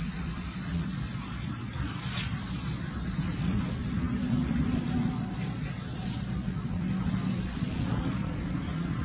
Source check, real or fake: fake